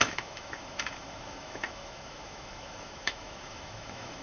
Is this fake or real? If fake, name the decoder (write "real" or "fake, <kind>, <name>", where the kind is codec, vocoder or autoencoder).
fake, autoencoder, DAC-VAE